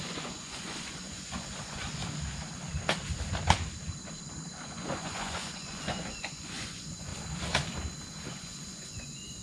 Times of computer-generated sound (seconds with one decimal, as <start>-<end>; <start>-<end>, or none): 0.0-2.0; 4.5-7.1; 8.3-9.4